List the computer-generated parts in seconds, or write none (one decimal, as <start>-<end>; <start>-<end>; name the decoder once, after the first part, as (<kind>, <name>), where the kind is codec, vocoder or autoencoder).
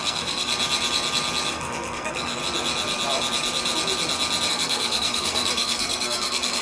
0.0-0.5 (codec, SNAC); 1.5-2.4; 4.5-6.6